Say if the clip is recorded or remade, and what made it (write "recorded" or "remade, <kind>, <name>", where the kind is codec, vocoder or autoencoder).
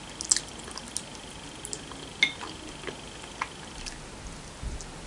recorded